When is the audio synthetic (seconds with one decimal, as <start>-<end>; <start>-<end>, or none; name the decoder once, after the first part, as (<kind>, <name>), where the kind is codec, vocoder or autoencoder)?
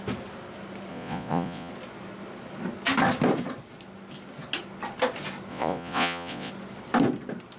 0.9-1.7 (vocoder, Vocos); 5.5-6.5